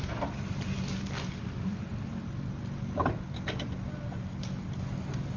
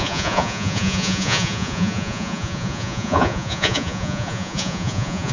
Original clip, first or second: first